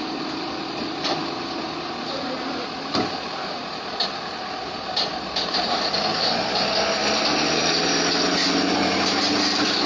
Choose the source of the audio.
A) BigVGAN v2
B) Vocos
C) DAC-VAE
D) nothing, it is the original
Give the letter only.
D